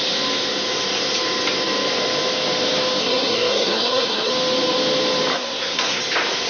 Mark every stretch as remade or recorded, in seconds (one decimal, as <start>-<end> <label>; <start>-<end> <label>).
0.0-3.0 recorded; 3.0-4.3 remade; 4.3-5.3 recorded; 5.3-6.0 remade; 6.0-6.5 recorded